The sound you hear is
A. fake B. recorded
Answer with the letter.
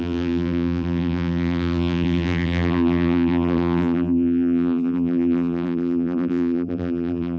A